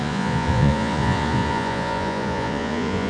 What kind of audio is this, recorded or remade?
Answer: remade